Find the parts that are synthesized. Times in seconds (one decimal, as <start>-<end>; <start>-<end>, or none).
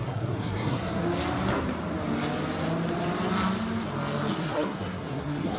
0.0-1.0; 4.3-5.6